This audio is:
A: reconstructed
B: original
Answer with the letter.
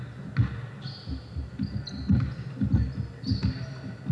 B